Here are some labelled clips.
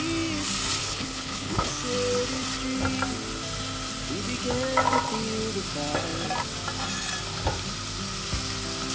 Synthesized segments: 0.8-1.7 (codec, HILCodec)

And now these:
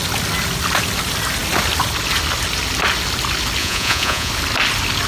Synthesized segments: 3.6-4.3 (vocoder, Vocos)